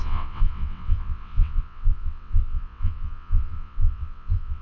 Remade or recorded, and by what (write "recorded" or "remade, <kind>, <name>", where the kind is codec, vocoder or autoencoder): remade, vocoder, WaveNeXt